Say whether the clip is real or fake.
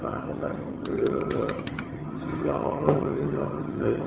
fake